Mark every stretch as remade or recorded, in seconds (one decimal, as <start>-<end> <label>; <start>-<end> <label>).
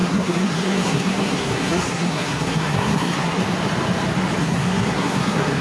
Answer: 0.0-3.4 remade; 3.4-4.4 recorded; 4.4-5.6 remade